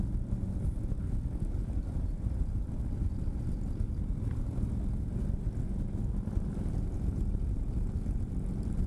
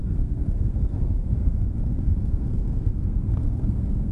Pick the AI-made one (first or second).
second